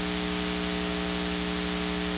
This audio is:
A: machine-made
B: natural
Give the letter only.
B